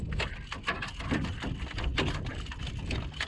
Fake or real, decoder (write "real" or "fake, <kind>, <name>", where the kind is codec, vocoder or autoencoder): real